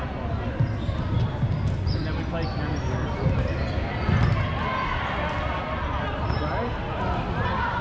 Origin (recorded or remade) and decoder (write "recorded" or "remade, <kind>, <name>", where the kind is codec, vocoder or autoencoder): recorded